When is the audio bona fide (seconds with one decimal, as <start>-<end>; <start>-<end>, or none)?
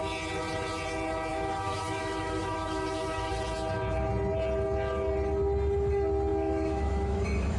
0.0-1.3; 3.3-6.3